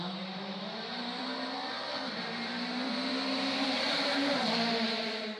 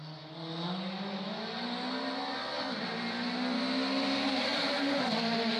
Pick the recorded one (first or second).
second